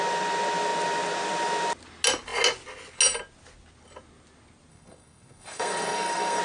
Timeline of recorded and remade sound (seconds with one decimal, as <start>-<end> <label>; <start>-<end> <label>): 0.0-4.7 recorded; 4.7-6.4 remade